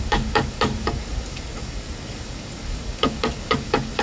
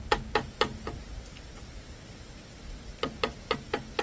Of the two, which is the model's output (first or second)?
first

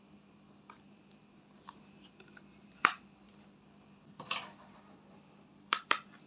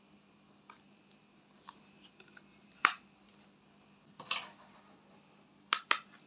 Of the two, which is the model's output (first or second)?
first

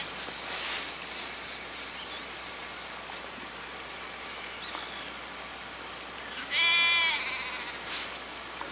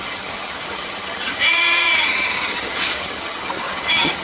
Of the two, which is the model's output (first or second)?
second